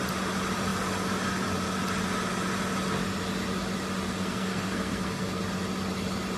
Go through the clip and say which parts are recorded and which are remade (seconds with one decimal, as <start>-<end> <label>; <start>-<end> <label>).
0.0-4.1 recorded; 4.1-5.4 remade; 5.4-6.4 recorded